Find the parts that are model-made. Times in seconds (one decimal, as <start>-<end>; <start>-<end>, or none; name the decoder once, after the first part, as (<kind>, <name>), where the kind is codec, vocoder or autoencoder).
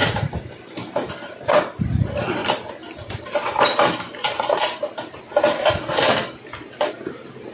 0.0-1.8 (vocoder, BigVGAN v2); 2.4-5.3